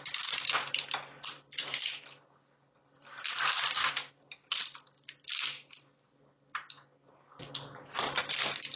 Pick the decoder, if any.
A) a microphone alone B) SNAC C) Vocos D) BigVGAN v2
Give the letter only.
A